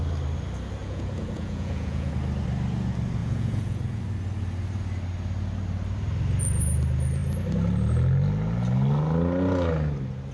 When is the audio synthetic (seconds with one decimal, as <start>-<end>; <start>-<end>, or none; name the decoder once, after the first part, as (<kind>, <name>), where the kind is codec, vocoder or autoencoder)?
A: 0.8-2.1 (vocoder, Vocos); 3.2-4.0